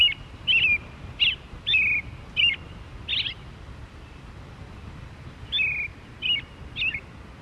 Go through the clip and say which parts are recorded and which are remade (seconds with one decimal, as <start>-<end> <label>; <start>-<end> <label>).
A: 0.0-7.4 recorded